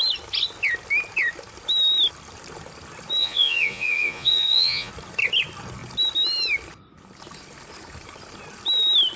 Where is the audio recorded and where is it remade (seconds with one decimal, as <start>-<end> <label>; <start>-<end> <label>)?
0.0-3.2 recorded; 3.2-4.9 remade; 4.9-9.2 recorded